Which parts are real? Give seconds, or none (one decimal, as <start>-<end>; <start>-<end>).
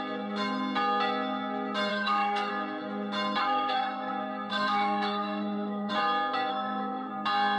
0.0-1.9; 2.5-3.4; 4.1-4.5; 5.9-6.5; 7.1-7.6